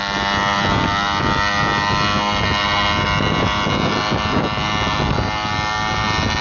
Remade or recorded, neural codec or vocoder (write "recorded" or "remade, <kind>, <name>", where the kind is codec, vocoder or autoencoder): recorded